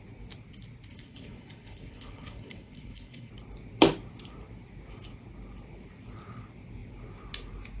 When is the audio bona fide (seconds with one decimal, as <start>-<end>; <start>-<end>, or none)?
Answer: 0.0-0.9; 3.3-7.8